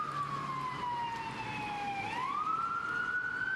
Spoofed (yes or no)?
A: no